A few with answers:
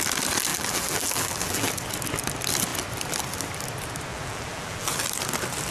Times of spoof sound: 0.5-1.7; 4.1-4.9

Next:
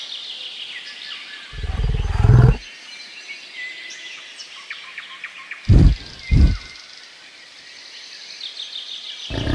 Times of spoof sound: none

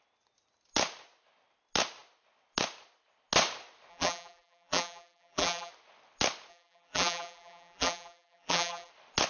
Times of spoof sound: 3.9-5.7; 6.5-8.9

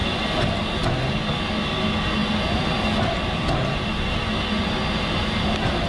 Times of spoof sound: none